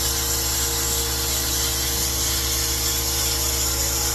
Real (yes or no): yes